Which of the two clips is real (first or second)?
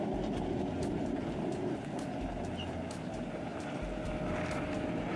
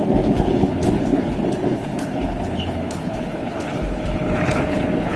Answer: first